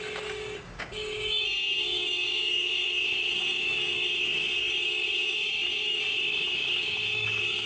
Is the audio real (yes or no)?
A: no